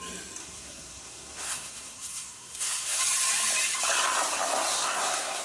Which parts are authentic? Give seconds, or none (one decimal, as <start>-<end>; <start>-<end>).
0.0-0.4; 3.0-4.7